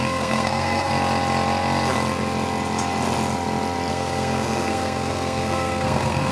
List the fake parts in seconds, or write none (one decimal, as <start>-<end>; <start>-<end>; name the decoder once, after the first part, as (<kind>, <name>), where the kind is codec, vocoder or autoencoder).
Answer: 0.0-0.9 (codec, SNAC); 3.9-6.3